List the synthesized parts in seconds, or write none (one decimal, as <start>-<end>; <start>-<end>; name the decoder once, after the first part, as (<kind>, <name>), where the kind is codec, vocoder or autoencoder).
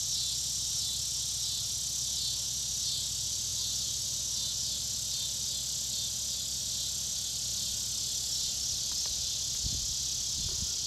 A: none